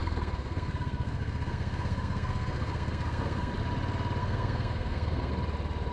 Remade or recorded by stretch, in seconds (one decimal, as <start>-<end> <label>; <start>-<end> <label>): 0.0-3.5 remade; 3.5-4.2 recorded; 4.2-5.3 remade; 5.3-5.9 recorded